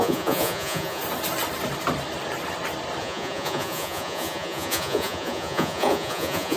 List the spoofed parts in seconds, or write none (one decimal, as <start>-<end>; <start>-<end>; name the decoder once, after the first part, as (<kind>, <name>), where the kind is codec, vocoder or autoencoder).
0.0-1.0 (vocoder, Vocos); 3.0-6.6